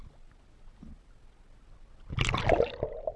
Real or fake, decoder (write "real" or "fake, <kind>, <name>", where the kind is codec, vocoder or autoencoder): real